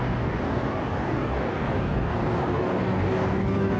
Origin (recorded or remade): remade